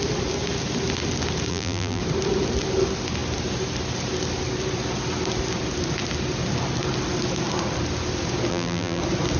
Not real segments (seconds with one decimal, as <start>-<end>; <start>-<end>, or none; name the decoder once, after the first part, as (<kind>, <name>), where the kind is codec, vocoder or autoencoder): 1.5-2.0 (vocoder, BigVGAN v2); 8.5-9.0